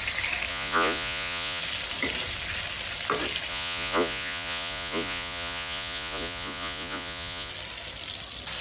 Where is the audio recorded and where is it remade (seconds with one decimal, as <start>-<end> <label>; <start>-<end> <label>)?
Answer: 0.0-0.5 recorded; 0.5-1.6 remade; 1.6-3.5 recorded; 3.5-7.5 remade; 7.5-8.6 recorded